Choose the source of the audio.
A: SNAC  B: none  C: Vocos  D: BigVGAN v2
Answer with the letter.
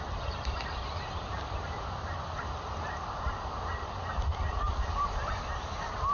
D